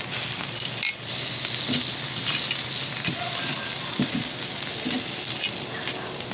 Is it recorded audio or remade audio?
recorded